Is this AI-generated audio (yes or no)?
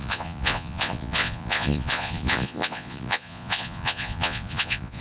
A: yes